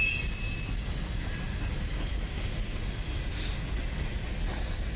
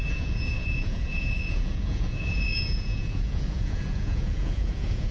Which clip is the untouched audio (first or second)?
first